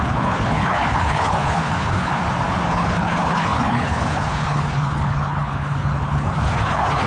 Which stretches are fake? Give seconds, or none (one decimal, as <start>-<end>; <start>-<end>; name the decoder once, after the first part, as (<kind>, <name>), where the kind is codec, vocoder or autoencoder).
0.0-2.2 (codec, HILCodec); 2.7-7.1